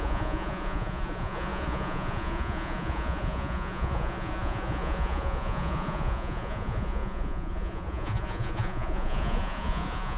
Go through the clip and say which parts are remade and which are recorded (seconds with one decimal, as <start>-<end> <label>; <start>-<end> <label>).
0.0-10.2 remade